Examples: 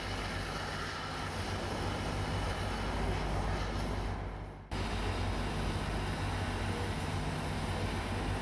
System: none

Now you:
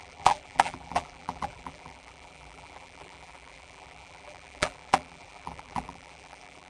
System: vocoder, BigVGAN v2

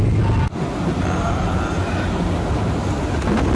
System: none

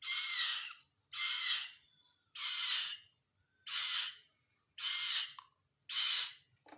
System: none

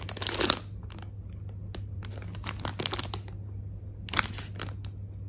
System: none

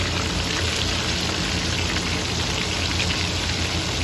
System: none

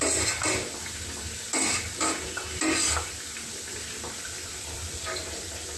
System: vocoder, BigVGAN v2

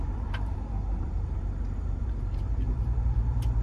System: vocoder, BigVGAN v2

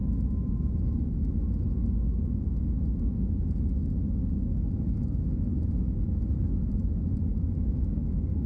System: autoencoder, DAC-VAE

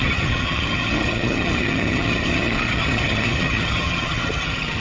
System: vocoder, HiFi-GAN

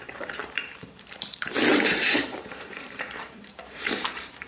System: vocoder, BigVGAN v2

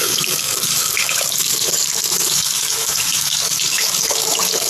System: codec, DAC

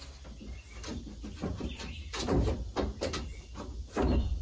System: none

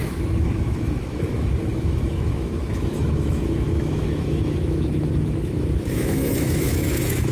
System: autoencoder, DAC-VAE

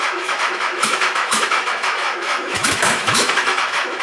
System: autoencoder, DAC-VAE